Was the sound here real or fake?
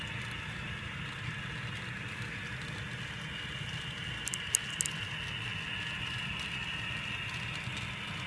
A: real